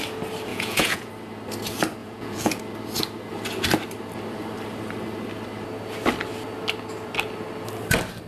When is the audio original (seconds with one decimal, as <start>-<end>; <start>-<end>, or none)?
0.0-0.5; 1.1-2.0; 2.6-8.3